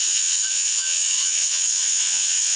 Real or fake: fake